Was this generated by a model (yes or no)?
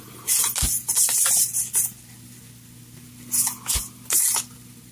no